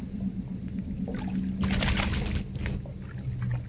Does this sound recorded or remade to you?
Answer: recorded